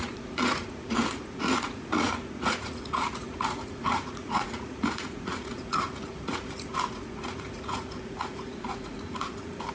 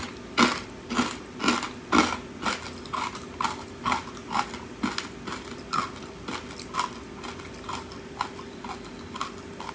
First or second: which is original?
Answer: second